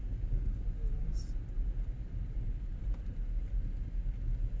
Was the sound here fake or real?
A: real